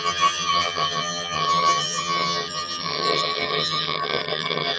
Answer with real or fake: fake